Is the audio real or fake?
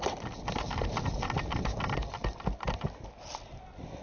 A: real